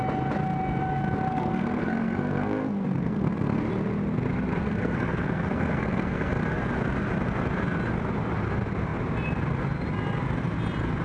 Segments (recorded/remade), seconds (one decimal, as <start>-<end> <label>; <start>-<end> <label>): 0.0-1.3 recorded; 1.3-3.6 remade; 3.6-4.6 recorded; 4.6-6.3 remade; 6.3-11.0 recorded